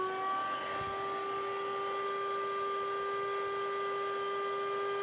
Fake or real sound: real